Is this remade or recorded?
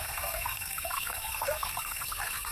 remade